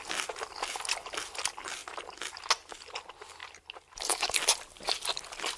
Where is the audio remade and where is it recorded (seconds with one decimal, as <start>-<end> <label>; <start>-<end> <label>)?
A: 0.0-5.6 recorded